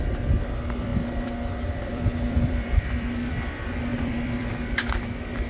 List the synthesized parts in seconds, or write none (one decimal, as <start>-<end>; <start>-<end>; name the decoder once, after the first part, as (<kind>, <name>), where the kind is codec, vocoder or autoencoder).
0.9-3.3 (vocoder, BigVGAN v2); 3.9-4.5